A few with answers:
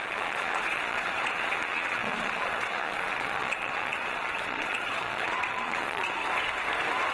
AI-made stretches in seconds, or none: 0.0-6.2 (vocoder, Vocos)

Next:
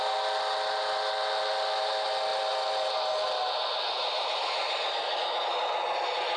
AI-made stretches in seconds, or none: none

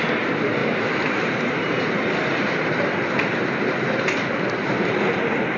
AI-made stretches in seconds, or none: 0.6-1.5 (vocoder, BigVGAN v2)

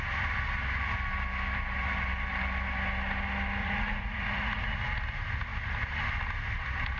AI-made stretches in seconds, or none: 3.6-4.7 (vocoder, Vocos)

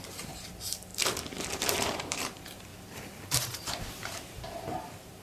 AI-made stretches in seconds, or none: 0.0-0.9 (vocoder, BigVGAN v2); 1.6-2.7; 3.4-5.2